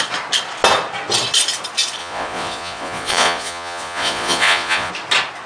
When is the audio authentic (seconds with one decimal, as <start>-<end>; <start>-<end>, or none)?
0.0-2.0; 4.9-5.5

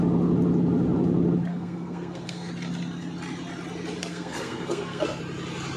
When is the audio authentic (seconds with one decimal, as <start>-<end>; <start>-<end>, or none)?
0.0-1.5; 2.5-4.0; 5.2-5.8

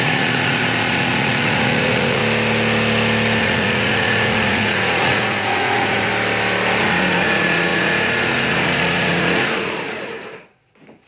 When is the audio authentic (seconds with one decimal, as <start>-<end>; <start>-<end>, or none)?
2.2-3.4; 6.1-6.8

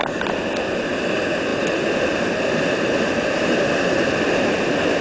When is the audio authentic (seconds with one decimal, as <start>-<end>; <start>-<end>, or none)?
0.0-1.5; 3.1-5.0

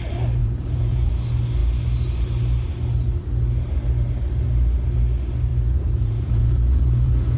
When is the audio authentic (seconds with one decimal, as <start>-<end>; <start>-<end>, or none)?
0.0-0.4; 1.1-5.5

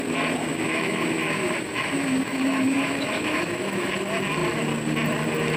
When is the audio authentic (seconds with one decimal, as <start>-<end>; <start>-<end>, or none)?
0.0-0.5; 3.9-5.6

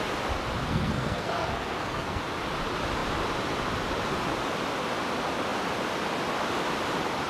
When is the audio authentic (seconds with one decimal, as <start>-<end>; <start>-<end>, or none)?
0.0-0.6; 2.2-7.3

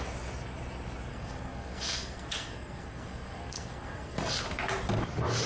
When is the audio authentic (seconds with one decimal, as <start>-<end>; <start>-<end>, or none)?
0.0-1.1; 4.4-5.5